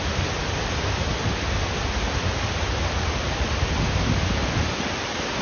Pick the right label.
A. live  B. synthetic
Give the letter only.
A